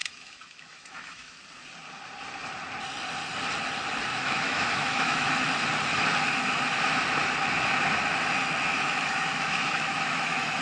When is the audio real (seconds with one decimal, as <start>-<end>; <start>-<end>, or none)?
1.3-4.1; 5.3-8.7